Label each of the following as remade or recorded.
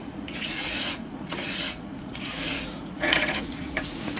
remade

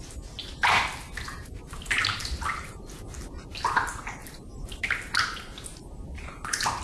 recorded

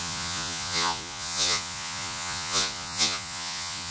remade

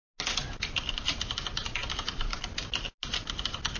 recorded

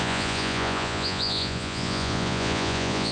remade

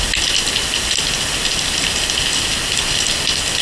recorded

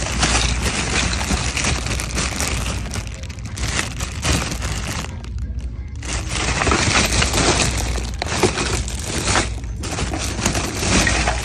recorded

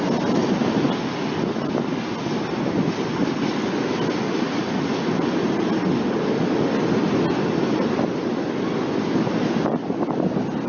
recorded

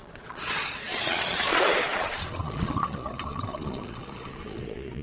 remade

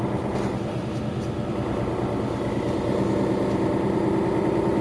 recorded